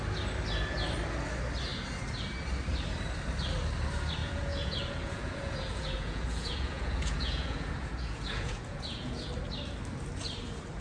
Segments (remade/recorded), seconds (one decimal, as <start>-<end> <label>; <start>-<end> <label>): 0.0-4.2 recorded; 4.2-9.3 remade; 9.3-10.8 recorded